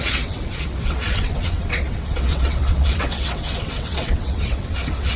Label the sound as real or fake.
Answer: fake